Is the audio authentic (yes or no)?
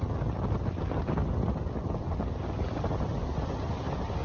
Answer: yes